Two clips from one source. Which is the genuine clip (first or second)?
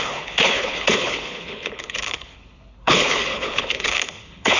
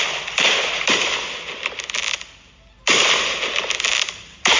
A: second